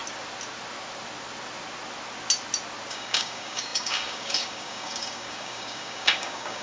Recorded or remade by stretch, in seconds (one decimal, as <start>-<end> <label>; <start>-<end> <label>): 0.0-2.9 recorded; 2.9-6.6 remade